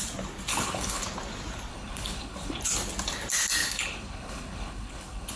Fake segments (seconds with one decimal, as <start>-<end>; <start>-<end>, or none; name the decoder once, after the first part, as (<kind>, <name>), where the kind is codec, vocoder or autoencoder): 0.5-1.0 (codec, HILCodec); 1.7-2.6; 3.6-5.4